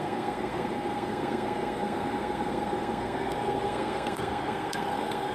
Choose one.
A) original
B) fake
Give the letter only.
B